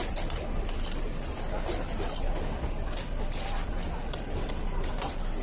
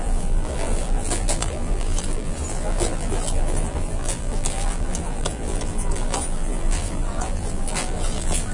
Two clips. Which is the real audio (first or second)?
first